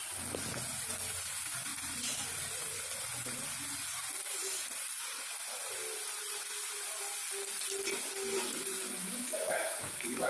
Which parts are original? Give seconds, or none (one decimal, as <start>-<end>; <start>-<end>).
0.0-9.0